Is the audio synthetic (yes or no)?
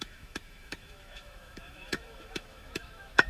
yes